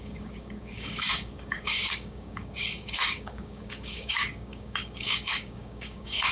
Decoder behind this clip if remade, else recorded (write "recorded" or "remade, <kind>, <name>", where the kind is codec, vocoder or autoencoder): remade, codec, DAC